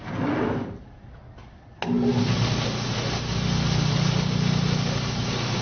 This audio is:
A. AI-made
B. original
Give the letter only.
B